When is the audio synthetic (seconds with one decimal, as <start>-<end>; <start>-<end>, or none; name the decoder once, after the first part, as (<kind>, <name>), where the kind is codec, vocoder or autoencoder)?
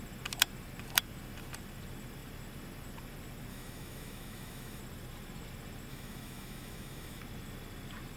3.5-4.8 (autoencoder, DAC-VAE); 5.9-7.2